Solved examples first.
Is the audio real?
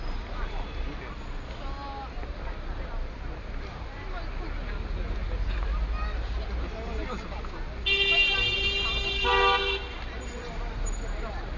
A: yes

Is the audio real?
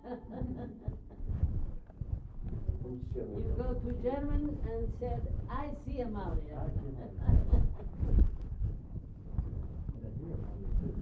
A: yes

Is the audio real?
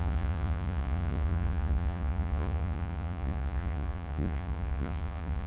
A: no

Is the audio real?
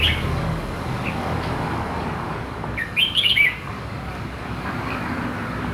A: no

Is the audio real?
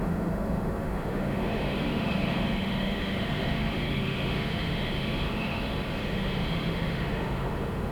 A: no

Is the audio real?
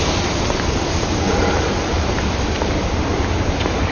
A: no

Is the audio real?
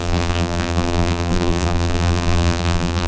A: no